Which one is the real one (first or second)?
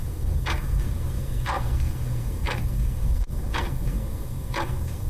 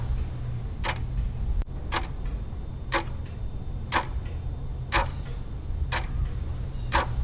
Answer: second